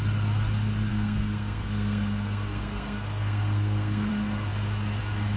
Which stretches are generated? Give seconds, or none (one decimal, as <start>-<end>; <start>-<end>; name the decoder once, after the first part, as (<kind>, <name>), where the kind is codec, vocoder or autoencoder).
0.9-4.1 (codec, SNAC)